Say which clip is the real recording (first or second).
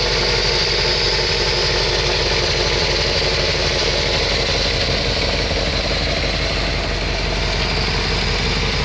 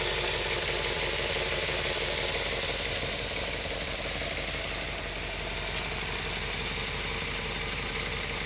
first